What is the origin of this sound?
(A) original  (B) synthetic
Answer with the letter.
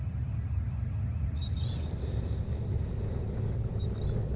A